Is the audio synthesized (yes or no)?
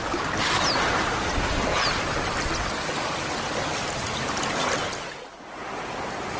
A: no